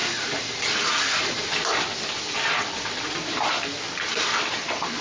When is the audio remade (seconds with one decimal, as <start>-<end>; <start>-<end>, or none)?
none